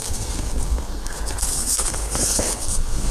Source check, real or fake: fake